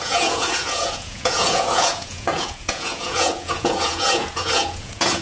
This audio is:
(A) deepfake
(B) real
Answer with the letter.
A